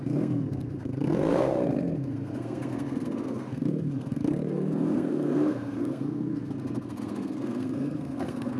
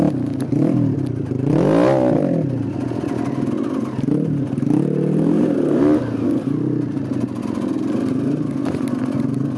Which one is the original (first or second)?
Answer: second